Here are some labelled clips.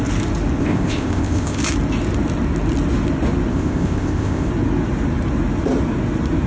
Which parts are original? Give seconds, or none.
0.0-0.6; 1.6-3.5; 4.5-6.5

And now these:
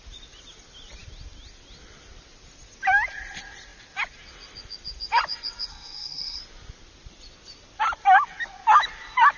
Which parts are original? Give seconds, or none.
0.0-5.7; 6.4-9.4

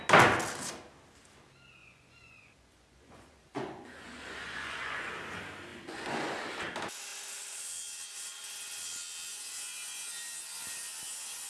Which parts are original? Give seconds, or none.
0.0-1.8; 5.1-5.7; 6.4-9.3; 10.1-11.5

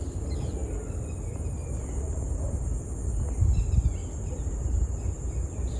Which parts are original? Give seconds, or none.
0.0-5.8